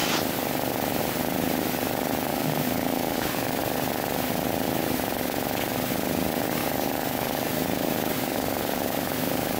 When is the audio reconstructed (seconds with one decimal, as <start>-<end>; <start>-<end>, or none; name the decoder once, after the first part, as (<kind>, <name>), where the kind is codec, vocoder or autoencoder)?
2.3-3.6 (codec, DAC); 6.6-9.6